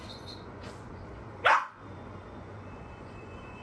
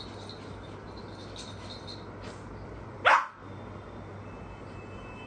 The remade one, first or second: first